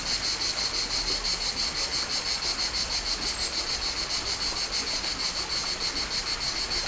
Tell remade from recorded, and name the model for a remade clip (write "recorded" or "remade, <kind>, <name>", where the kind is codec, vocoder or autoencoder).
recorded